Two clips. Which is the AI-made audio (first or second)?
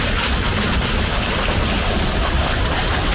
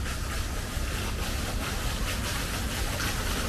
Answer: first